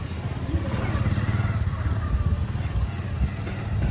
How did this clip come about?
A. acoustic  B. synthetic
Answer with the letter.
A